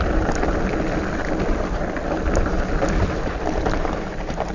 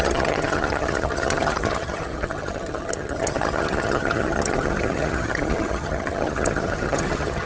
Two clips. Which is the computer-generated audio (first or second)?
second